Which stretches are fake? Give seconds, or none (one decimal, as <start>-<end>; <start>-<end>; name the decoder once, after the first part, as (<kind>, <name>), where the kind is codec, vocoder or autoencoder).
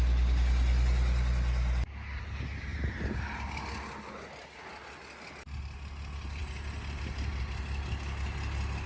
none